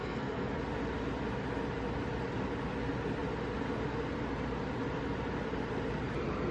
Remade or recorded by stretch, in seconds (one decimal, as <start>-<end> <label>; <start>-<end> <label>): 0.0-0.6 remade; 0.6-6.5 recorded